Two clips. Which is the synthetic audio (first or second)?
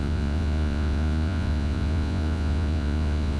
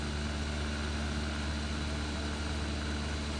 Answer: first